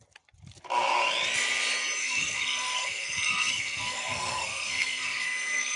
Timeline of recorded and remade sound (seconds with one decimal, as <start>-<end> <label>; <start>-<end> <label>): 0.0-2.0 recorded; 2.0-5.8 remade